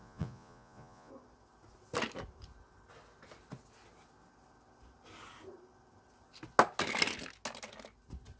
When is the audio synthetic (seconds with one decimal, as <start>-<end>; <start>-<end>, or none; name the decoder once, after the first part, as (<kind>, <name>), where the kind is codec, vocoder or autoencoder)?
0.0-1.1 (vocoder, Vocos)